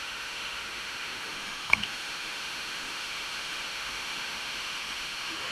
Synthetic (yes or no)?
yes